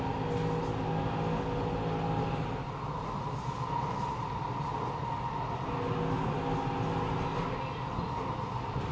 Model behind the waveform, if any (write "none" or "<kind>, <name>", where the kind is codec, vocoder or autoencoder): none